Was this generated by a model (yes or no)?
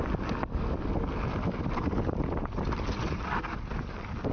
no